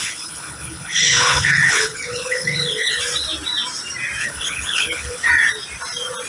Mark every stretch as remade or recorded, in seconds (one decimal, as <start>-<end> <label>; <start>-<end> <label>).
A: 0.0-2.9 remade; 2.9-4.2 recorded; 4.2-5.3 remade; 5.3-6.3 recorded